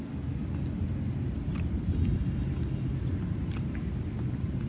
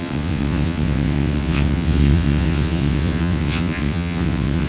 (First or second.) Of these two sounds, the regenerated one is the second